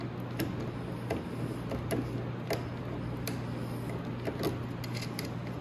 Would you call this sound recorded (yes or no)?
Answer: yes